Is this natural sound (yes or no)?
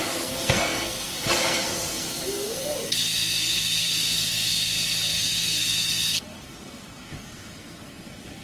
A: no